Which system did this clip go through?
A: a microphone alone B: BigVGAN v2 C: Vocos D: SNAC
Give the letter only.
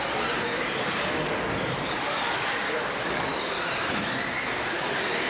A